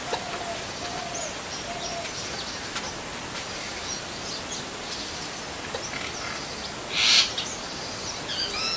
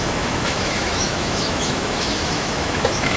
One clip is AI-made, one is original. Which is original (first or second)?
first